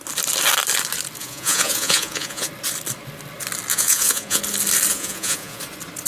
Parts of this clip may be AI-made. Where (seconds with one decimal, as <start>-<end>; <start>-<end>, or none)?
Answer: 1.2-2.5; 3.7-4.4; 4.9-5.6